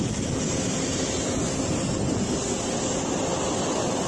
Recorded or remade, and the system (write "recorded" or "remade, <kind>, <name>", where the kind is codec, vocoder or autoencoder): recorded